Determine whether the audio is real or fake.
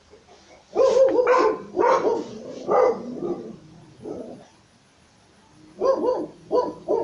real